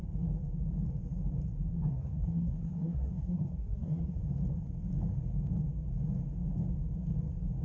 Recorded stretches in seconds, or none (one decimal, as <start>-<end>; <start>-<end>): 0.0-1.7; 4.2-7.6